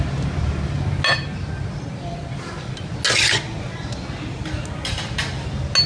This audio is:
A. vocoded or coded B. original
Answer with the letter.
B